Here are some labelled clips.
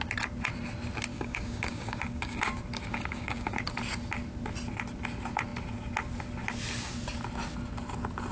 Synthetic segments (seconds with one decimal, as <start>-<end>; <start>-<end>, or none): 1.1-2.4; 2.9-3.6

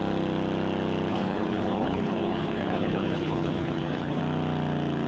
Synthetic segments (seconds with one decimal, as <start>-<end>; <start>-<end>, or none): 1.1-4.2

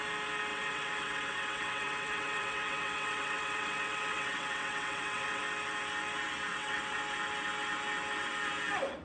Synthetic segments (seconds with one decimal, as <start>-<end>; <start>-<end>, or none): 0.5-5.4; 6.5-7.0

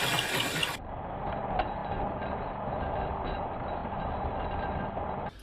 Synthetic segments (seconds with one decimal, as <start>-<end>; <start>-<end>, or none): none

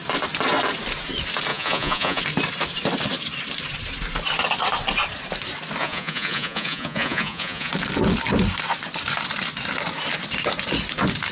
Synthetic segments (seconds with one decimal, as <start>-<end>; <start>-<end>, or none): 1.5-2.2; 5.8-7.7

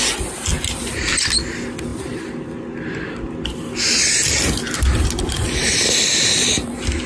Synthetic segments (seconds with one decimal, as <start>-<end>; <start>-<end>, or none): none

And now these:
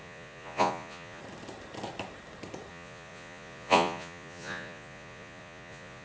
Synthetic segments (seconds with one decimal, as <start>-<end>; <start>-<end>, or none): 0.0-1.2; 2.7-6.0